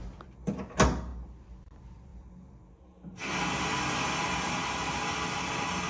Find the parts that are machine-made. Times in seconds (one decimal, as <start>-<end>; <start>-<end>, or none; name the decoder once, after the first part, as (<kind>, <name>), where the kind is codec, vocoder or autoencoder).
none